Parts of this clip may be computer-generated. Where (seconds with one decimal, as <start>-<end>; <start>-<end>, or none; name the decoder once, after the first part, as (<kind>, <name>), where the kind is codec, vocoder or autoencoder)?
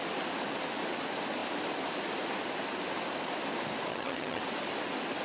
3.9-4.4 (vocoder, HiFi-GAN)